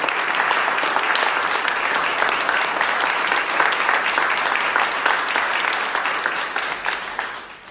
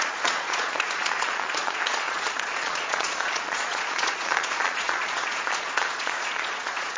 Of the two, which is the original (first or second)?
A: first